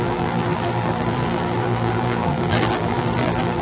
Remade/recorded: remade